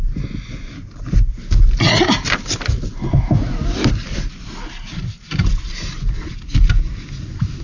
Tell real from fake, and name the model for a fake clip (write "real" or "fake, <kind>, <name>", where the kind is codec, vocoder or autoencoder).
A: real